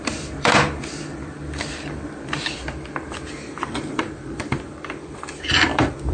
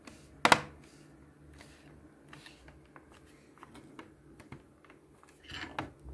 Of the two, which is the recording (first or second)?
second